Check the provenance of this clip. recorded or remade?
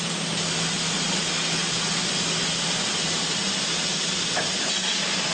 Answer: recorded